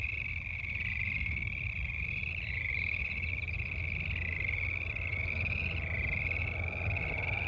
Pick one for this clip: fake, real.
real